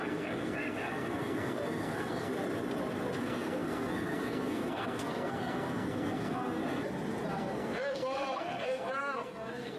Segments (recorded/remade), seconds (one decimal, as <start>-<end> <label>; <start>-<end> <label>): 0.0-2.3 remade; 2.3-3.2 recorded; 3.2-6.6 remade; 6.6-7.3 recorded; 7.3-9.8 remade